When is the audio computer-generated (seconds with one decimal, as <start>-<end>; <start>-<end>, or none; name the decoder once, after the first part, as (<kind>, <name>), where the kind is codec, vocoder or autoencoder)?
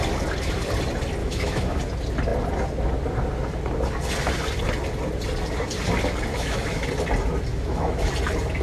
1.2-1.8 (autoencoder, DAC-VAE); 6.3-6.9; 7.5-8.1